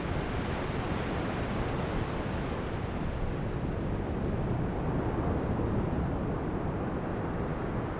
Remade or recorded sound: recorded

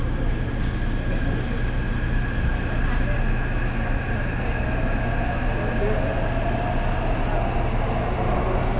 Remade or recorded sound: recorded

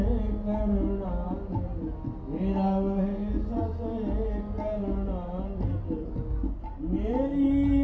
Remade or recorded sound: recorded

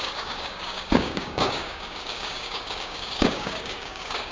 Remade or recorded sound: remade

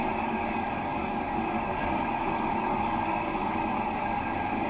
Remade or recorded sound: remade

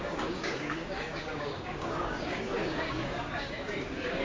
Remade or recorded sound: remade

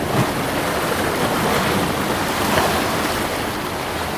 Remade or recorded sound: recorded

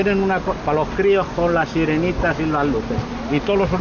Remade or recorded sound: recorded